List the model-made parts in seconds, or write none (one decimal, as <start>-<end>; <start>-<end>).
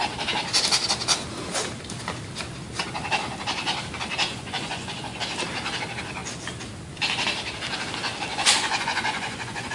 4.3-5.2; 8.3-9.7